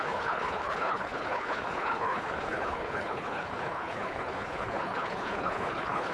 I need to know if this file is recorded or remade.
remade